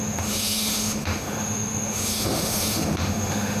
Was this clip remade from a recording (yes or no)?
yes